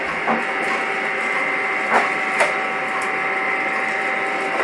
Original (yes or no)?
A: yes